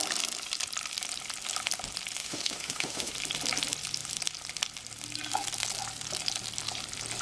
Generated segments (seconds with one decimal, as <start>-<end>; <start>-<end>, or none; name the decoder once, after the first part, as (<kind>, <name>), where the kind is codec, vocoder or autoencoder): 2.2-3.1 (autoencoder, DAC-VAE)